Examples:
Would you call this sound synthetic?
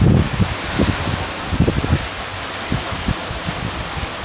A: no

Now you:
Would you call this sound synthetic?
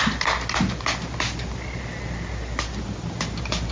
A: no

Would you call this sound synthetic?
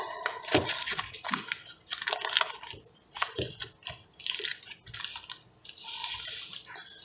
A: no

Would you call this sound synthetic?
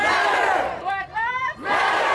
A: no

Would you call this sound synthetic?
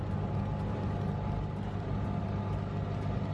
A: no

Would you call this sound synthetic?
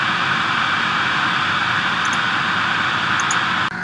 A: no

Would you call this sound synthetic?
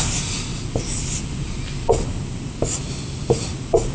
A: no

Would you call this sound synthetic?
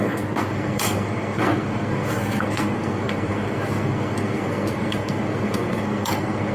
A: yes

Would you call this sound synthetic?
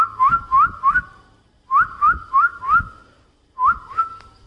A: no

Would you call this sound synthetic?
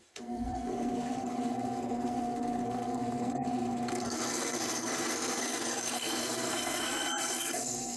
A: yes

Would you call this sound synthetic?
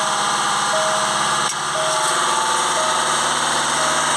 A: no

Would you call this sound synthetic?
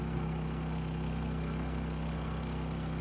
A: yes